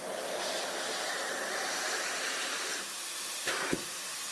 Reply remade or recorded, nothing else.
remade